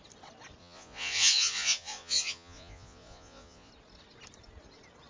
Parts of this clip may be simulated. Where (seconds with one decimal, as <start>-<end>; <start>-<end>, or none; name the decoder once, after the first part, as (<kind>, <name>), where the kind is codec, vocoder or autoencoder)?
0.6-3.7 (vocoder, Vocos)